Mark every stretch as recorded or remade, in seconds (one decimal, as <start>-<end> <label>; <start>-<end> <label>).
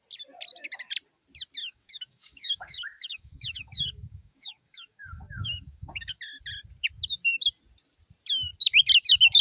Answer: 0.0-1.6 recorded; 1.6-6.2 remade; 6.2-9.4 recorded